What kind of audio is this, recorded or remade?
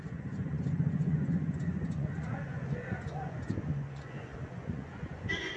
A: remade